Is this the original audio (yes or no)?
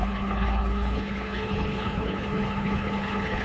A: no